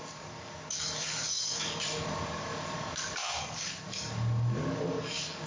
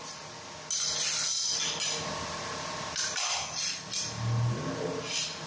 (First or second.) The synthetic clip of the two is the first